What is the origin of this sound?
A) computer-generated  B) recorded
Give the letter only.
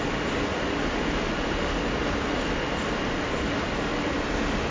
B